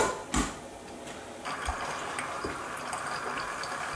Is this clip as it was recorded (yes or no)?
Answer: yes